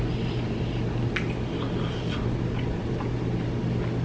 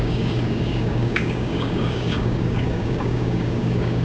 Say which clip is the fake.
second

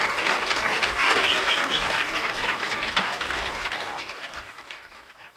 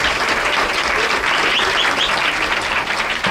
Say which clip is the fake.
first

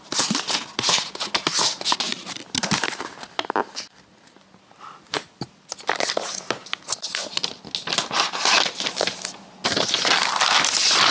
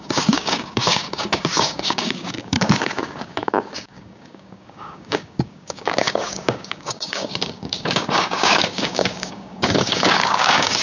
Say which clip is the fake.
second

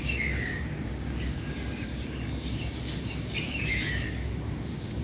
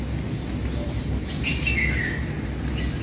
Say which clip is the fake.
first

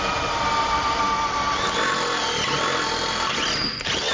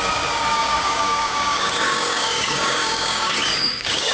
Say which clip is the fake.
second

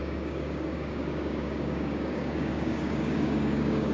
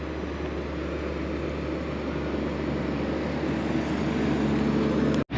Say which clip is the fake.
first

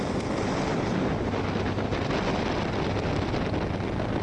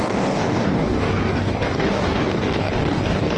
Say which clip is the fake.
second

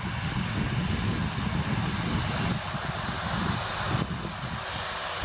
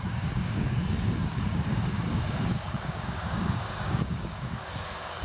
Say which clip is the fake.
second